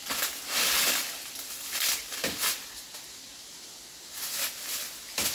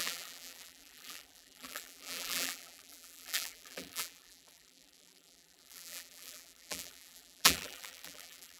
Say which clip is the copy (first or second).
second